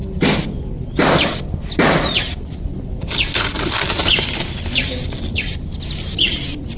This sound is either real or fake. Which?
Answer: fake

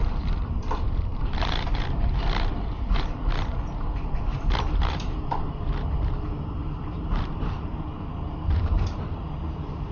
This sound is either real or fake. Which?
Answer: fake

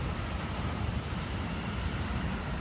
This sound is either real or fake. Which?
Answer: fake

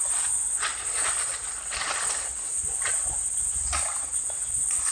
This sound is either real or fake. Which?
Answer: real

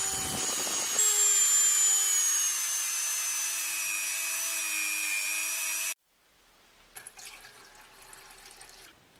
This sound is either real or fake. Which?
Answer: real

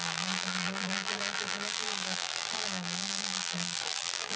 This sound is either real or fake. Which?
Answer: fake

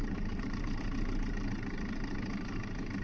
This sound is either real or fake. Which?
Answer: fake